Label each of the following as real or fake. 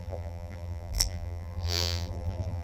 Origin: fake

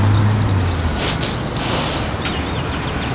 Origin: real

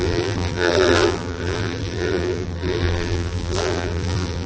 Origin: fake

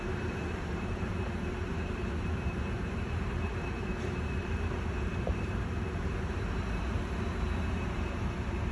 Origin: fake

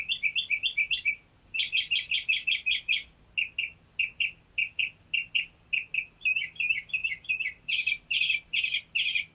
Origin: real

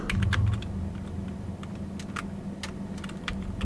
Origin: real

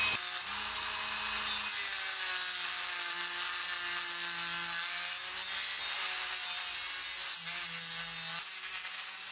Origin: real